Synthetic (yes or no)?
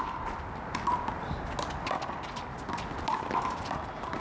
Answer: no